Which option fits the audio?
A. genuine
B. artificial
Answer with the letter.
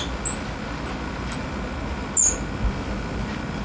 A